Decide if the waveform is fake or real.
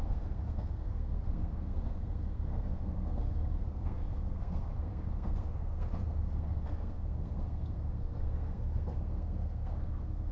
fake